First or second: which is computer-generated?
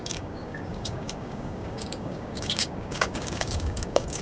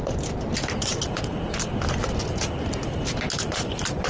first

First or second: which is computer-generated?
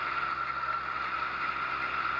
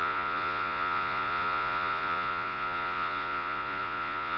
second